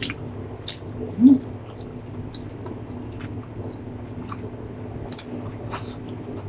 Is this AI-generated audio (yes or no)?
no